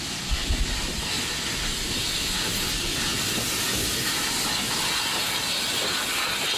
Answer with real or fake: real